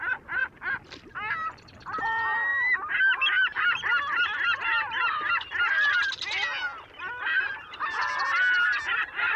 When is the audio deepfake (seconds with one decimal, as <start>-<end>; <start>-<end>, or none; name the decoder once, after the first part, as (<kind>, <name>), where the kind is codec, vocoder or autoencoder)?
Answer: none

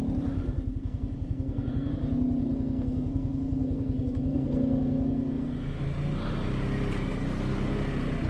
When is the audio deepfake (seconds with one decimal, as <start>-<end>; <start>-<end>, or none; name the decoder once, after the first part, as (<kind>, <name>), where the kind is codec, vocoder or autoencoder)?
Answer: 0.4-1.9 (codec, SNAC); 2.4-5.8

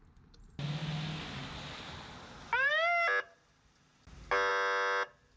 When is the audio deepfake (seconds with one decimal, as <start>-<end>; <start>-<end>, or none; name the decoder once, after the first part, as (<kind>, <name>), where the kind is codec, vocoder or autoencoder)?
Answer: none

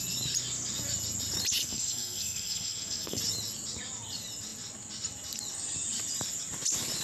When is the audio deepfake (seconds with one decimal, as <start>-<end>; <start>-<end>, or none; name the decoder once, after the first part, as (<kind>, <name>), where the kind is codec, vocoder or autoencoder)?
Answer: 1.6-3.2 (codec, SNAC)

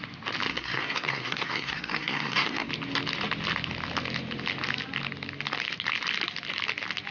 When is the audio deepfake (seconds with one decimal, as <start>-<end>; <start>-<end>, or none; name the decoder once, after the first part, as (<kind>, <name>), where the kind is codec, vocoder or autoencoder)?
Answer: 0.5-2.7 (codec, SNAC)

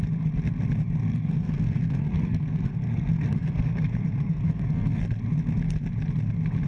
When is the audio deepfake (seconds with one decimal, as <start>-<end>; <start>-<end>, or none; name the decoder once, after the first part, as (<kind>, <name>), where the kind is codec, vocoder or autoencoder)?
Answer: 1.0-5.0 (codec, SNAC)

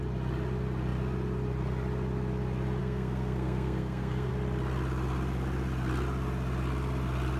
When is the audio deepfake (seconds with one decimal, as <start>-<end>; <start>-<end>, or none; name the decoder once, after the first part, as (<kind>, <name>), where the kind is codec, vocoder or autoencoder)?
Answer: 2.8-4.3 (codec, SNAC)

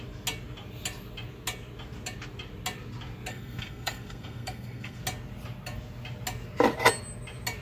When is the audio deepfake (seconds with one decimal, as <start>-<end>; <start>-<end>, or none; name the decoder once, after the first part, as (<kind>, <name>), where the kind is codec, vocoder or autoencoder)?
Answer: 3.3-5.0 (codec, SNAC)